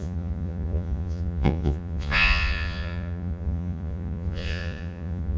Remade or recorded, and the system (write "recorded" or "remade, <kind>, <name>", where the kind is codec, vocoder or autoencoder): remade, vocoder, Vocos